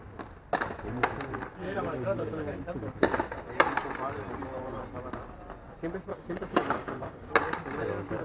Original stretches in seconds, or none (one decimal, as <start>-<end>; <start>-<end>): 0.0-1.6; 2.6-6.1; 7.3-8.2